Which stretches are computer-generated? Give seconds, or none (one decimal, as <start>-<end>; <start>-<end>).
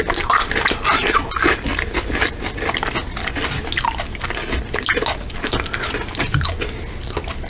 none